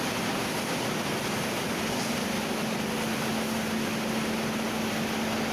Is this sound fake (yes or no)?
no